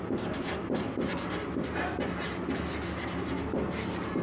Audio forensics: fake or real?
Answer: real